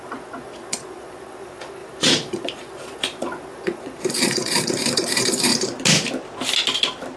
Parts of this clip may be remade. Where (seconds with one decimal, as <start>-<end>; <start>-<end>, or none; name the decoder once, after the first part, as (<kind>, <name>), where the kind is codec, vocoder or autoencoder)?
0.0-5.5 (vocoder, Vocos)